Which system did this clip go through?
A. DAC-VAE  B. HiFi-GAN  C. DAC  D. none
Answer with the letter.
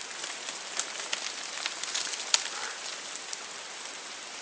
D